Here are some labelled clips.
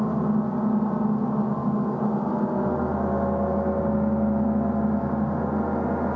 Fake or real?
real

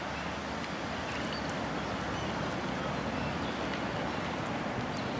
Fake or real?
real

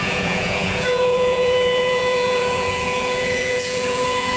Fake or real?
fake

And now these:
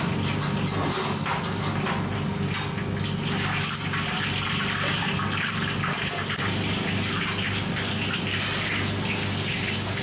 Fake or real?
real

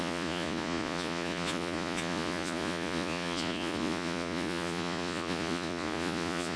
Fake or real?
fake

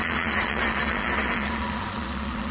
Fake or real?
fake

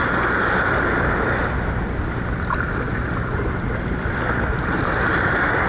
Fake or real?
real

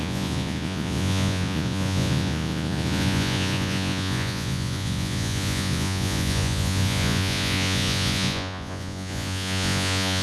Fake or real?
fake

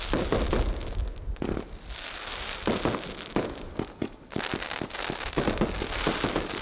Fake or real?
real